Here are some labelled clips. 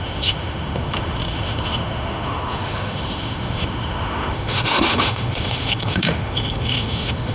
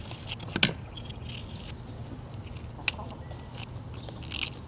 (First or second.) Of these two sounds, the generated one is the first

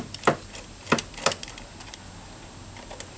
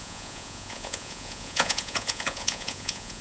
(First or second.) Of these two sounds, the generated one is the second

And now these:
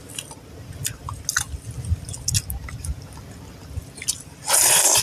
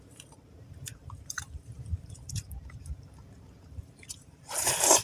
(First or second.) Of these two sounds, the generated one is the second